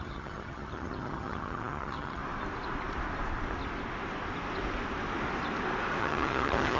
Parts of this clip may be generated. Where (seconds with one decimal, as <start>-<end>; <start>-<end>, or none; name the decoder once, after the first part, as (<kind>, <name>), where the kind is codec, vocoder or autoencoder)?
0.0-2.2 (vocoder, HiFi-GAN); 6.0-6.8